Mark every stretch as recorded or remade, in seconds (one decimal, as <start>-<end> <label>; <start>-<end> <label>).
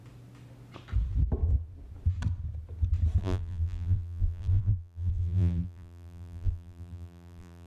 0.0-3.2 recorded; 3.2-7.7 remade